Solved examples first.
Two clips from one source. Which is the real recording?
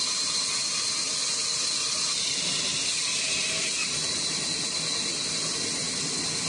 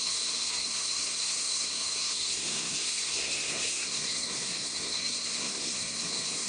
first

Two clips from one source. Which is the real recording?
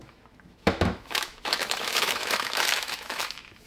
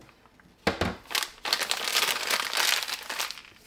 second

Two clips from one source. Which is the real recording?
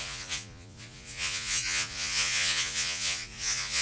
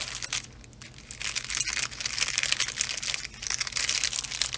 second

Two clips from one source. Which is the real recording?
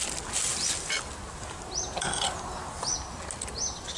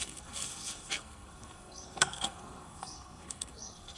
first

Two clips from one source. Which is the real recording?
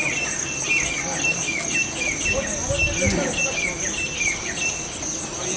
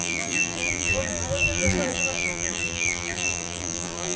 first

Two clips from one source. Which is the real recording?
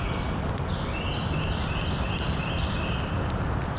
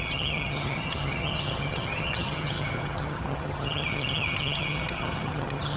first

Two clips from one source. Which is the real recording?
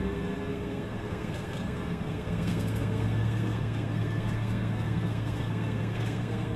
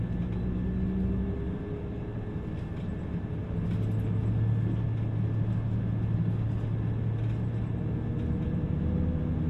second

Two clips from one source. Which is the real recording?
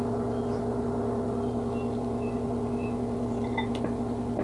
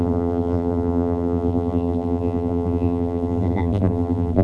first